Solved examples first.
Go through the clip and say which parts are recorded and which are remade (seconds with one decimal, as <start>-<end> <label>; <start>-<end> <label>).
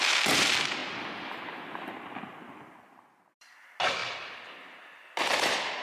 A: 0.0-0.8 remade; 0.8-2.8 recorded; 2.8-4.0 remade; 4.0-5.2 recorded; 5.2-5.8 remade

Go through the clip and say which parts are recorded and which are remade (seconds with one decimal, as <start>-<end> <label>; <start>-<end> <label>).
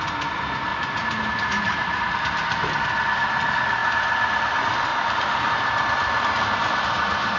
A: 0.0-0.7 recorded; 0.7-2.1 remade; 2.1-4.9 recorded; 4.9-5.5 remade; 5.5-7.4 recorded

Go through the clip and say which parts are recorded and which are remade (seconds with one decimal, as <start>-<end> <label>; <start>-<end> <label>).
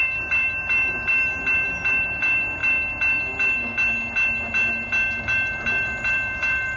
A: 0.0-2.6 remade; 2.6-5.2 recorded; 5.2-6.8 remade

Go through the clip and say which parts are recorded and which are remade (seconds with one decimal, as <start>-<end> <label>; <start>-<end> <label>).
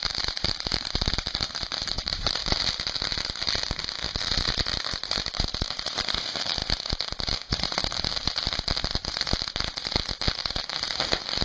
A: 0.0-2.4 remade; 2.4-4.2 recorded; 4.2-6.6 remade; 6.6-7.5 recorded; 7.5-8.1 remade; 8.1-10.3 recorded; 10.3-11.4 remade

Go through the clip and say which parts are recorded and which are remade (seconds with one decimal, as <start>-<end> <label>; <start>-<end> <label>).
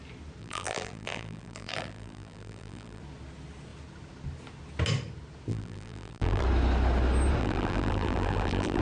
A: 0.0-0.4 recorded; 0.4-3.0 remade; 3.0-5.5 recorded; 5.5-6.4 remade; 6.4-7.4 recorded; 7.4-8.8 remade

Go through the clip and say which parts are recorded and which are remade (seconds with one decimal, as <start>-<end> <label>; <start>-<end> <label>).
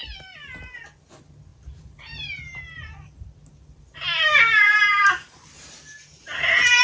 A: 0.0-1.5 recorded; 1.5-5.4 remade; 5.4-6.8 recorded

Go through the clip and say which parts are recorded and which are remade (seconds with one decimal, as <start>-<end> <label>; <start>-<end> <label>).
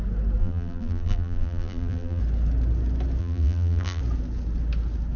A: 0.0-0.4 recorded; 0.4-2.2 remade; 2.2-3.2 recorded; 3.2-4.0 remade; 4.0-5.2 recorded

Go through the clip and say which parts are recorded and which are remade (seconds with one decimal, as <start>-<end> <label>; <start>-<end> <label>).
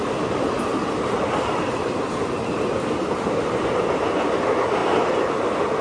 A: 0.0-0.7 recorded; 0.7-4.2 remade; 4.2-5.8 recorded